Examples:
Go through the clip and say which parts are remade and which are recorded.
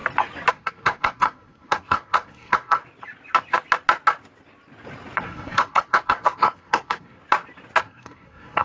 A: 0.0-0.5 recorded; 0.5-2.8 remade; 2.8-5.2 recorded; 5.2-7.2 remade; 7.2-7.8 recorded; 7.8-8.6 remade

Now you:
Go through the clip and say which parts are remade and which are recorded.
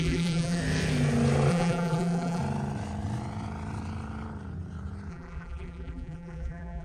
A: 0.0-0.6 remade; 0.6-1.5 recorded; 1.5-2.4 remade; 2.4-5.1 recorded; 5.1-6.8 remade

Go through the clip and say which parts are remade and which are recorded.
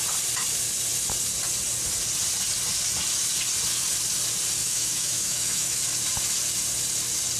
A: 0.0-4.6 recorded; 4.6-5.8 remade; 5.8-7.4 recorded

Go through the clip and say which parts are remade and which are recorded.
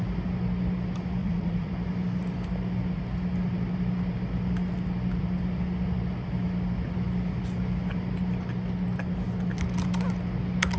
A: 0.0-1.2 recorded; 1.2-1.7 remade; 1.7-10.8 recorded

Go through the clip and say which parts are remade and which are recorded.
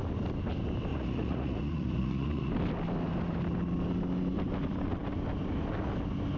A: 0.0-0.9 recorded; 0.9-2.5 remade; 2.5-6.4 recorded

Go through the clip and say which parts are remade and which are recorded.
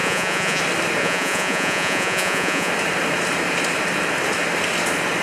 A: 0.0-0.6 remade; 0.6-1.0 recorded; 1.0-2.7 remade; 2.7-5.2 recorded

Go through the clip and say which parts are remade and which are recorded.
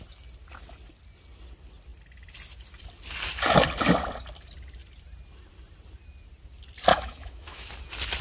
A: 0.0-6.9 recorded; 6.9-7.7 remade; 7.7-8.2 recorded